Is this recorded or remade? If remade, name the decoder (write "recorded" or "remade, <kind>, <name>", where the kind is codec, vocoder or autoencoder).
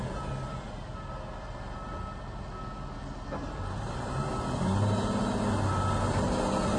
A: recorded